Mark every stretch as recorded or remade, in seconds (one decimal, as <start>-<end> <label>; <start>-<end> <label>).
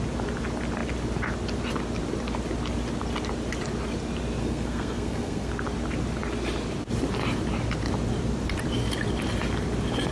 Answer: 0.0-4.4 recorded; 4.4-5.5 remade; 5.5-10.1 recorded